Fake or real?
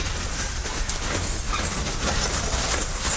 real